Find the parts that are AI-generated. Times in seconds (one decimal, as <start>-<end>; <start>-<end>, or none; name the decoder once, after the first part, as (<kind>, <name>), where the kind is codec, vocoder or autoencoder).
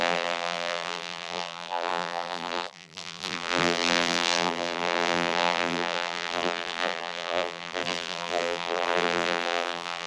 0.0-10.1 (vocoder, BigVGAN v2)